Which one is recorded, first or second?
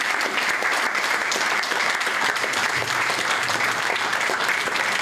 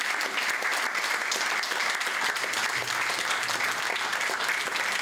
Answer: second